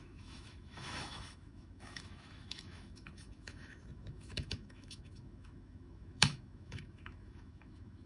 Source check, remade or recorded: remade